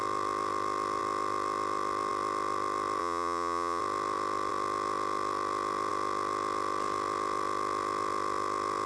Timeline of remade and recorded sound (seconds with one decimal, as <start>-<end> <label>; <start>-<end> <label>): 0.0-3.0 recorded; 3.0-3.8 remade; 3.8-8.9 recorded